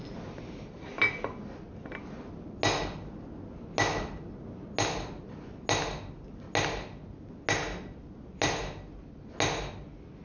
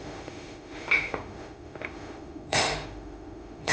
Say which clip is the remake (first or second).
second